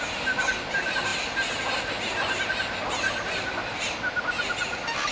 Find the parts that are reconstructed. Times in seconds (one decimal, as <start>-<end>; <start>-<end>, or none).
none